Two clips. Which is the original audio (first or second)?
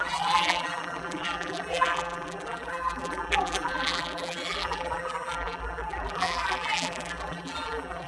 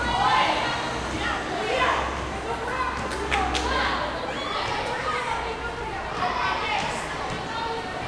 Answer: second